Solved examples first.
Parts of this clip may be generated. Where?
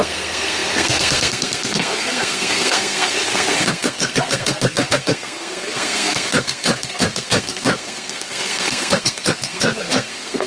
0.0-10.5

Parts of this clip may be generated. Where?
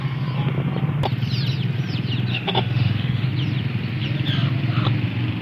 2.3-3.3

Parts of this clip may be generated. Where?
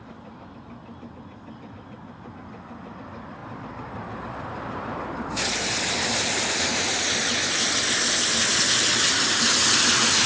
none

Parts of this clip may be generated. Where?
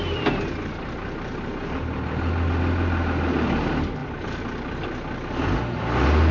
none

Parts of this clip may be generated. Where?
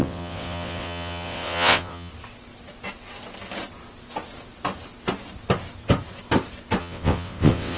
0.0-2.1; 6.8-7.8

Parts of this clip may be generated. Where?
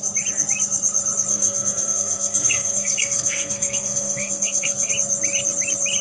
1.3-4.9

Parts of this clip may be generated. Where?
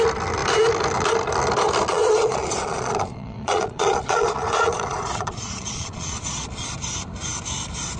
1.9-6.7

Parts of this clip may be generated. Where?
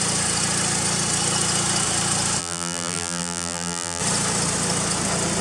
2.4-4.0